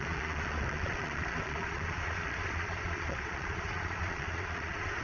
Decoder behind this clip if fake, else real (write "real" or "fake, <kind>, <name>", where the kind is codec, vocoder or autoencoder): fake, vocoder, Vocos